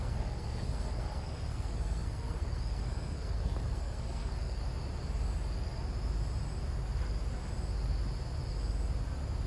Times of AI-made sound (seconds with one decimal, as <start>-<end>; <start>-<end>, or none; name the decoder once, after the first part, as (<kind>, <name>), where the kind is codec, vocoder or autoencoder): 0.0-4.6 (codec, SNAC)